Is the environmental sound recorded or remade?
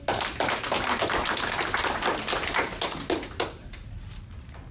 recorded